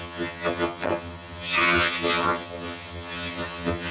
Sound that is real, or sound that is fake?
fake